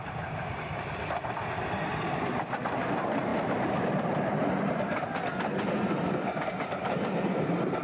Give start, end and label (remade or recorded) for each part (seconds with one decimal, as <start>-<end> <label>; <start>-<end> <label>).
0.0-3.3 recorded; 3.3-4.1 remade; 4.1-7.8 recorded